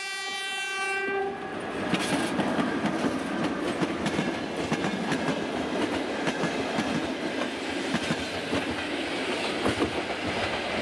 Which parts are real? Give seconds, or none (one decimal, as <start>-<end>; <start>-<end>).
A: 0.0-10.8